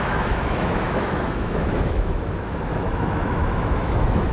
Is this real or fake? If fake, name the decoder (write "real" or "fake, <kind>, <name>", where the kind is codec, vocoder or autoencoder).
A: fake, autoencoder, DAC-VAE